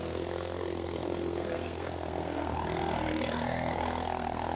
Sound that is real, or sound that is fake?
fake